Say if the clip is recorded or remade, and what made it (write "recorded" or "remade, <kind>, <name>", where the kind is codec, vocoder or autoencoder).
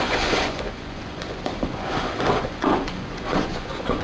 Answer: remade, vocoder, Vocos